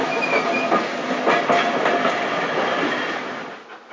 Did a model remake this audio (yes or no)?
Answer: no